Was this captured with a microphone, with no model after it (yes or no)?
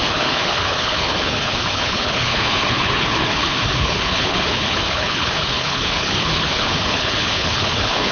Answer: no